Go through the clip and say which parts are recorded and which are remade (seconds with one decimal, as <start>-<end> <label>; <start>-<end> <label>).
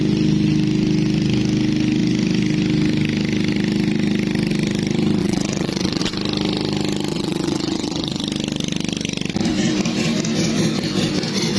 0.0-5.2 recorded; 5.2-6.0 remade; 6.0-7.1 recorded; 7.1-8.2 remade; 8.2-11.6 recorded